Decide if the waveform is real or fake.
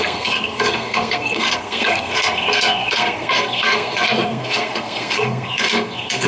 fake